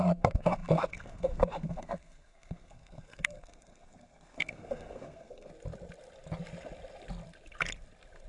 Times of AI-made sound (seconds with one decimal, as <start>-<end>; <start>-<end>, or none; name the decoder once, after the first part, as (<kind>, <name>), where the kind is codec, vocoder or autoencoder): 0.0-5.5 (codec, SNAC)